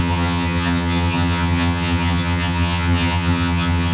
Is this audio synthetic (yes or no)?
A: yes